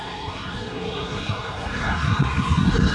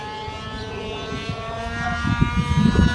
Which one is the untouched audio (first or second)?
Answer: second